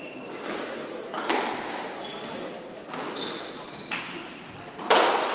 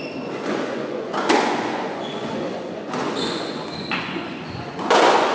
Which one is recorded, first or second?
first